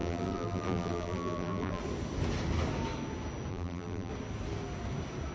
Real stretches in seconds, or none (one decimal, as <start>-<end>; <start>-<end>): 1.8-3.5; 4.1-5.3